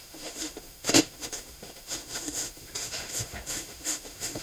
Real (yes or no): no